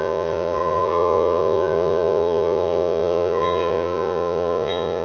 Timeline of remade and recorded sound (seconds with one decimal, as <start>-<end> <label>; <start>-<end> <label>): 0.0-5.0 remade